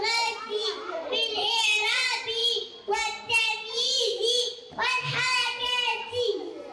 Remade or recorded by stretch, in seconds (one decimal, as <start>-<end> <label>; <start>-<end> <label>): 0.0-6.7 recorded